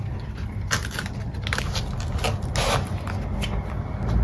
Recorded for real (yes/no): yes